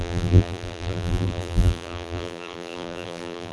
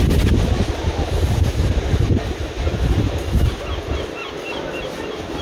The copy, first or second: first